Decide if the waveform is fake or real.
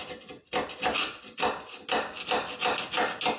real